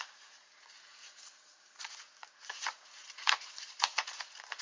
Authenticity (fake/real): fake